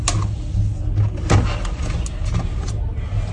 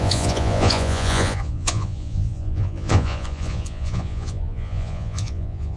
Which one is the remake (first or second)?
second